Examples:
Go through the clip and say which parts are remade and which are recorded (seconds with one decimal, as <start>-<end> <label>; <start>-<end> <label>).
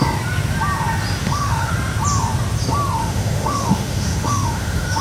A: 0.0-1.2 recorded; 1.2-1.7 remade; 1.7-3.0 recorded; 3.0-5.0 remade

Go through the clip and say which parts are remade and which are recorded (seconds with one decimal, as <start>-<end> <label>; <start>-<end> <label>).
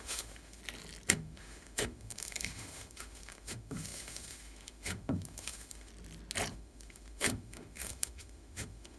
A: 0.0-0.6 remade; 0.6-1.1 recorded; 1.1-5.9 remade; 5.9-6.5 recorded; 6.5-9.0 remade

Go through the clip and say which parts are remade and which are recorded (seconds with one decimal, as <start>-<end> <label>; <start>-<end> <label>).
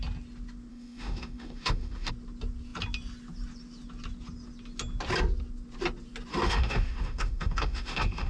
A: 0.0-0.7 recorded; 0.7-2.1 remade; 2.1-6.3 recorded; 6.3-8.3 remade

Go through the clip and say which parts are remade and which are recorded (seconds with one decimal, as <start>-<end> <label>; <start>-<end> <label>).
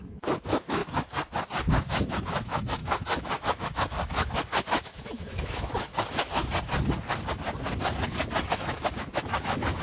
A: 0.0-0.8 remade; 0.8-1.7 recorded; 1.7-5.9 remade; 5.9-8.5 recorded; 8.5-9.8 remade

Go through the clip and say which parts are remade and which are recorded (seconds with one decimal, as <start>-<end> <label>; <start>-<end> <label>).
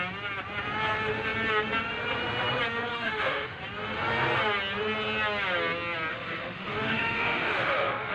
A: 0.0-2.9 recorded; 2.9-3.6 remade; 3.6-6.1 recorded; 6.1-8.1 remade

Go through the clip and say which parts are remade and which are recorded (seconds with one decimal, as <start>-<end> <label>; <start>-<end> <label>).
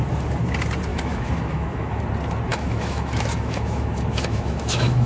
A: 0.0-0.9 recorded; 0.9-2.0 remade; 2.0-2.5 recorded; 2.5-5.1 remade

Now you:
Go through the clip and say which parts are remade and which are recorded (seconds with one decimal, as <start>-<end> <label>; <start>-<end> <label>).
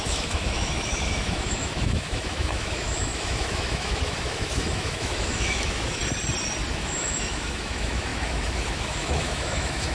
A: 0.0-6.0 remade; 6.0-6.7 recorded; 6.7-9.9 remade